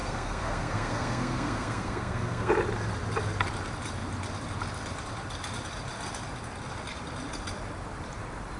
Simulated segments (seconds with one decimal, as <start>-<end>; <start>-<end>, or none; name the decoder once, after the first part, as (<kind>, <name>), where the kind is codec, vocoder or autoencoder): 0.0-2.5 (codec, SNAC)